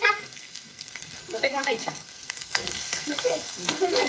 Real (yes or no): no